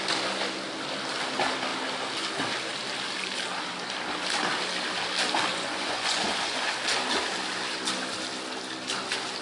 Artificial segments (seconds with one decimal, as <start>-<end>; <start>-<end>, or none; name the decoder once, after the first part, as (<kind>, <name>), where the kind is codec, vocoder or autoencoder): 5.5-6.7 (vocoder, Vocos)

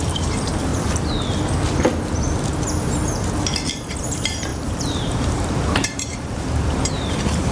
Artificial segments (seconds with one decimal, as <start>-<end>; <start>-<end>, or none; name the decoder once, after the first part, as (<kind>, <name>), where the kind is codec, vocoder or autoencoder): 0.0-0.7 (vocoder, BigVGAN v2); 4.0-7.5

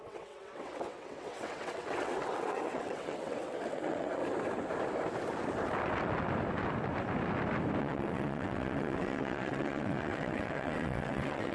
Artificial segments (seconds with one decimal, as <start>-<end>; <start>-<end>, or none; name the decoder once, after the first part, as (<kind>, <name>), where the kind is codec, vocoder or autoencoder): 0.0-4.2 (vocoder, WaveNeXt); 7.8-11.5

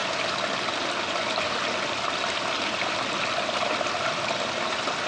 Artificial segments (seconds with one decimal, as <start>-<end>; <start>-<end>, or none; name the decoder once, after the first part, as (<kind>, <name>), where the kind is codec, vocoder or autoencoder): none

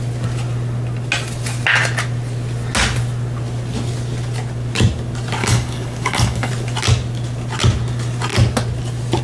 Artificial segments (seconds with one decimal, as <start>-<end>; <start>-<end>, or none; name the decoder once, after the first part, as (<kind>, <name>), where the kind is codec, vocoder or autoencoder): 5.4-6.5 (codec, DAC)

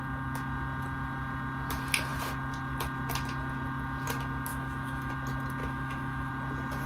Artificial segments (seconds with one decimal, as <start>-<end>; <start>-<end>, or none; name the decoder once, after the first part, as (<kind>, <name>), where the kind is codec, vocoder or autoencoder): 4.5-5.1 (autoencoder, DAC-VAE); 5.6-6.3